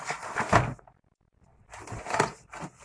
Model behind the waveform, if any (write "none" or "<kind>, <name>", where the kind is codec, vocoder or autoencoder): none